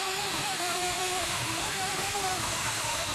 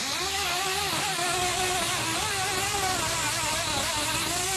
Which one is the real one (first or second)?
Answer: second